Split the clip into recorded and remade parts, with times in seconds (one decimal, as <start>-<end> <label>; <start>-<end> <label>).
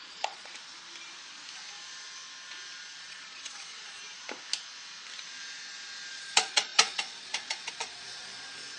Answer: 0.0-0.5 remade; 0.5-3.0 recorded; 3.0-4.0 remade; 4.0-6.1 recorded; 6.1-8.8 remade